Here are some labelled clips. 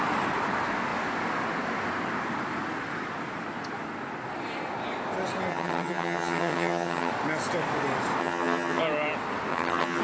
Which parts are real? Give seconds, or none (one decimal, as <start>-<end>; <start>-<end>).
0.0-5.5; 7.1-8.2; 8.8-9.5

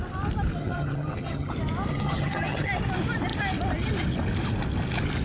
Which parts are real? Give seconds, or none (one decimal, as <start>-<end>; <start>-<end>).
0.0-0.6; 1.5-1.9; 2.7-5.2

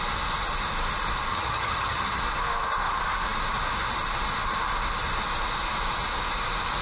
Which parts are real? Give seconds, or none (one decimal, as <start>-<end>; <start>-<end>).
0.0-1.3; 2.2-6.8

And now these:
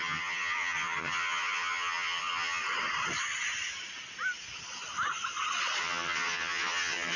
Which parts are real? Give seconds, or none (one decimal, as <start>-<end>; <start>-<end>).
2.6-5.8

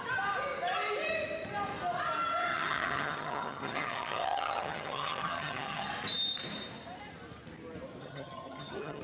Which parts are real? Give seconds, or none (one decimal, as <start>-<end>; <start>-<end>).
0.0-2.5; 5.9-8.0